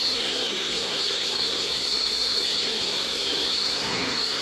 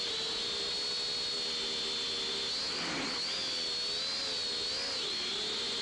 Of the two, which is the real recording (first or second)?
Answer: second